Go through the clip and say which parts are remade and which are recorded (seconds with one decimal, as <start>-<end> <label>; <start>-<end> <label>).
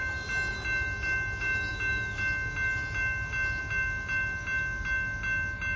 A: 0.0-5.8 recorded